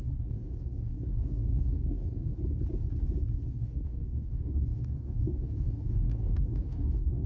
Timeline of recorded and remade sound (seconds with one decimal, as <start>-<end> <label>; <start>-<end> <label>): 0.0-2.4 remade; 2.4-3.5 recorded; 3.5-7.3 remade